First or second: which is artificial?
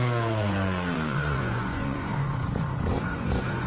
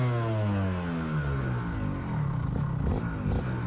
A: first